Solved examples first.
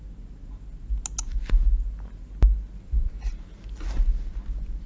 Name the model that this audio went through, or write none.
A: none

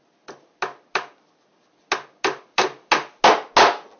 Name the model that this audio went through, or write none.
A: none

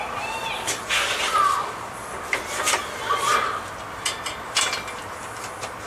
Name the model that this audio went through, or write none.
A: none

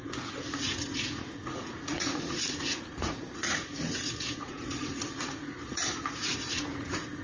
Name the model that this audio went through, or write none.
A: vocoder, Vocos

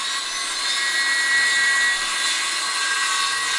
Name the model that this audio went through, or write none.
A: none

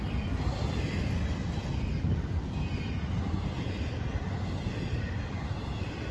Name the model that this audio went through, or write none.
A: none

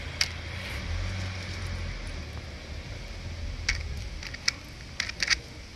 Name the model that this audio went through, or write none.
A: none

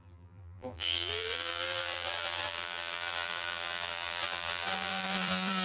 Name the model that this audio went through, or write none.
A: vocoder, BigVGAN v2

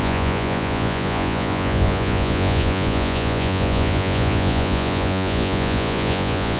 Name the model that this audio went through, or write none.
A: vocoder, Vocos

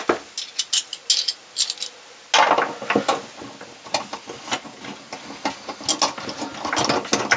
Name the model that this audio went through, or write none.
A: none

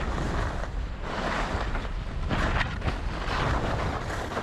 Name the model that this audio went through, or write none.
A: none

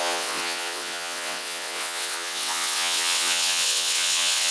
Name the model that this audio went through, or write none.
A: vocoder, WaveNeXt